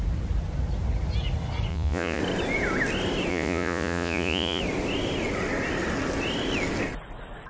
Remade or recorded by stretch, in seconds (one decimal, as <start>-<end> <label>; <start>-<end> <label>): 0.0-1.7 recorded; 1.7-2.2 remade; 2.2-3.3 recorded; 3.3-4.6 remade; 4.6-7.5 recorded